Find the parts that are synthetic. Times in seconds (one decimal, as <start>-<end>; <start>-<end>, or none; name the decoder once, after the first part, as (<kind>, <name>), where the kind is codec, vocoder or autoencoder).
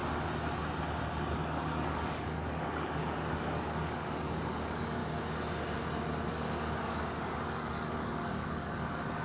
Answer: 1.3-5.0 (codec, DAC); 6.3-9.2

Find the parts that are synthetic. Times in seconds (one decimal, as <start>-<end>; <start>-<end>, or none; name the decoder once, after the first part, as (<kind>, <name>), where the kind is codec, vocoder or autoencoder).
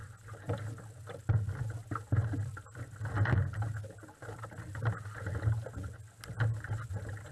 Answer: none